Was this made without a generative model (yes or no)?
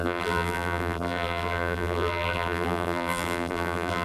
no